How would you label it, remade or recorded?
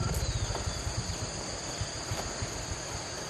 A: recorded